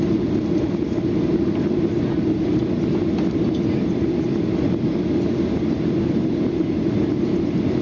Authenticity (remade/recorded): recorded